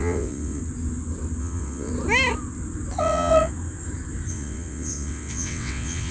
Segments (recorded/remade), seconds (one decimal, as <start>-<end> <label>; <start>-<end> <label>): 0.0-0.6 remade; 0.6-1.4 recorded; 1.4-1.9 remade; 1.9-3.0 recorded; 3.0-3.5 remade; 3.5-4.3 recorded; 4.3-6.1 remade

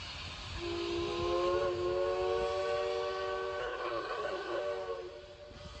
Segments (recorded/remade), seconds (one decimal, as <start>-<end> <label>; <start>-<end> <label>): 0.0-3.6 recorded; 3.6-4.6 remade; 4.6-5.8 recorded

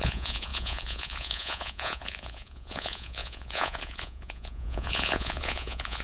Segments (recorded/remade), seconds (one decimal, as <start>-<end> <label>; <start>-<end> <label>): 0.0-6.0 remade